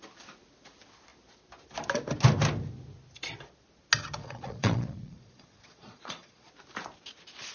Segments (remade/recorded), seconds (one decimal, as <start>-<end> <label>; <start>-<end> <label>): 0.0-4.2 recorded; 4.2-6.5 remade; 6.5-7.5 recorded